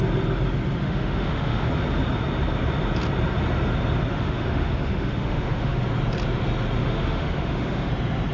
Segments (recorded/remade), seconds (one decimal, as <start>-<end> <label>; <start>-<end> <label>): 0.0-0.8 recorded; 0.8-1.7 remade; 1.7-4.1 recorded; 4.1-5.8 remade; 5.8-6.8 recorded; 6.8-7.9 remade; 7.9-8.3 recorded